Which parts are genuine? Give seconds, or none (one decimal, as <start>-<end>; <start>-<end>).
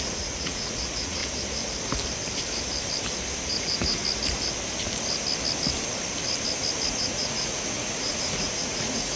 1.2-3.5; 4.0-6.9